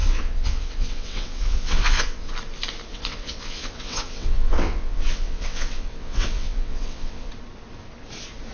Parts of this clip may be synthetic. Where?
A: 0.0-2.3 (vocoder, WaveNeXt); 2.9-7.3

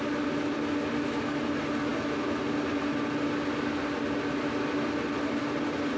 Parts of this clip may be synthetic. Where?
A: none

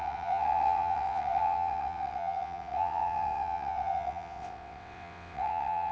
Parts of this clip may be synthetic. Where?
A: 0.0-5.9 (vocoder, WaveNeXt)

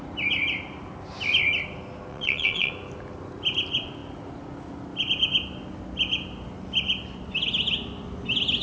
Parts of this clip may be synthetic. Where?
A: 2.1-2.7 (vocoder, WaveNeXt)

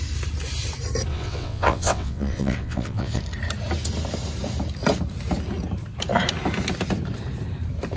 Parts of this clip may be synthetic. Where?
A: 1.1-3.2 (vocoder, WaveNeXt)

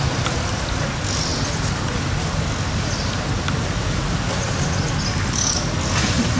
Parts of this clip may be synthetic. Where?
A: none